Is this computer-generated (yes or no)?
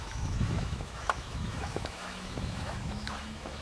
yes